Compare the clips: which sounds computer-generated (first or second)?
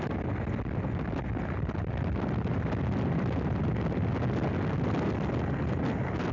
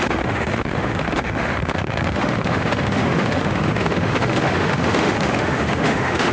second